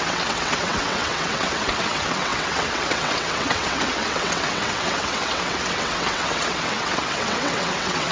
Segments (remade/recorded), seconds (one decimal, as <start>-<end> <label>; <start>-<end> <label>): 0.0-8.1 remade